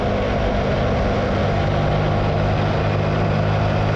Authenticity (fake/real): real